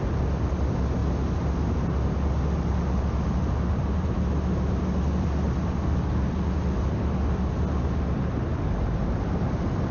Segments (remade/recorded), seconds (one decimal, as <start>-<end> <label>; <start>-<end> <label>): 0.0-9.9 recorded